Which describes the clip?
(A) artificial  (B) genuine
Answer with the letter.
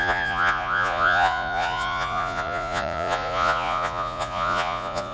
A